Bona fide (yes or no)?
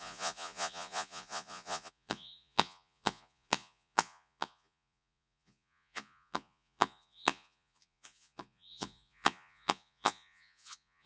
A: no